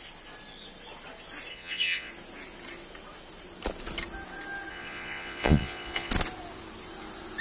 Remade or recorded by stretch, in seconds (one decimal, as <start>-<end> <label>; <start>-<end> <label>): 0.0-1.5 recorded; 1.5-2.1 remade; 2.1-4.7 recorded; 4.7-6.1 remade; 6.1-7.4 recorded